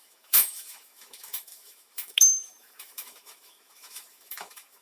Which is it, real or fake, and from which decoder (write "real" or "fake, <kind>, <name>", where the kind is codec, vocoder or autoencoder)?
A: fake, autoencoder, DAC-VAE